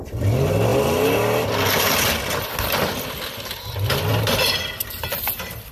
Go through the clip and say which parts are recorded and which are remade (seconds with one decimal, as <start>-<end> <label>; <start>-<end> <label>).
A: 0.0-5.7 recorded